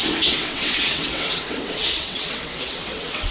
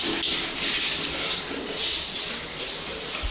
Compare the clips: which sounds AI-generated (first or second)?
first